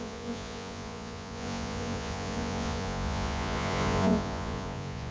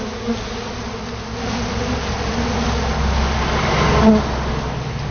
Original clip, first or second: second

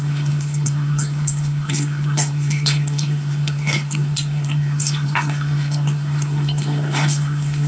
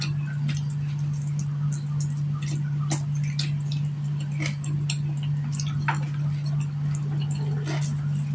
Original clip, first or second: second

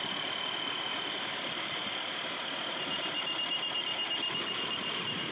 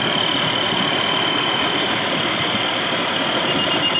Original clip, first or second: second